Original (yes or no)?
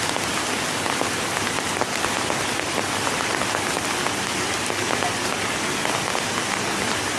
yes